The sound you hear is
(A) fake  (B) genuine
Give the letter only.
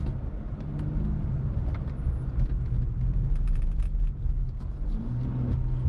B